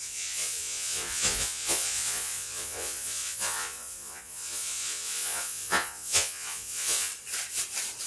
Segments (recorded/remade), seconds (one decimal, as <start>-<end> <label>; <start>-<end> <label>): 0.0-7.1 remade; 7.1-8.1 recorded